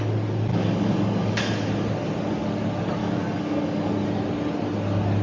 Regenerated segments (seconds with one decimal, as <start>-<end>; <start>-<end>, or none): 0.5-1.4; 3.0-3.9